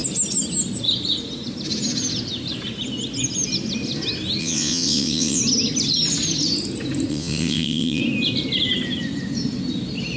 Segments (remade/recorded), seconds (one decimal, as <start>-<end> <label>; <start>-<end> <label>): 0.0-4.4 recorded; 4.4-5.4 remade; 5.4-7.1 recorded; 7.1-8.0 remade; 8.0-10.2 recorded